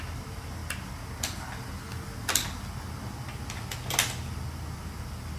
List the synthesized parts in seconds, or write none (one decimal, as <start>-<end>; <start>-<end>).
none